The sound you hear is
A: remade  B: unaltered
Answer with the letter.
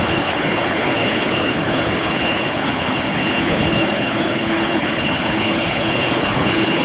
A